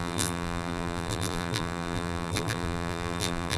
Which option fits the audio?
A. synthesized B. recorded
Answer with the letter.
A